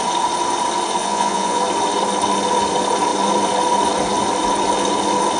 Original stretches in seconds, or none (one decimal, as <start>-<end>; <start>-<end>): 0.0-1.0; 1.6-5.4